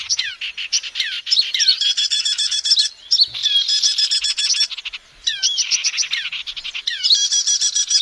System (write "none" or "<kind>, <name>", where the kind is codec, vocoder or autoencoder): vocoder, BigVGAN v2